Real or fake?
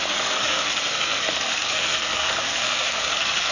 fake